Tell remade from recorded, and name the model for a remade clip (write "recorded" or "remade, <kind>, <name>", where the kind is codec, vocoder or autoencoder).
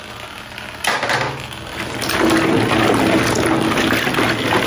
recorded